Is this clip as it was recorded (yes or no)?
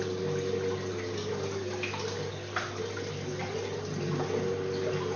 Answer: yes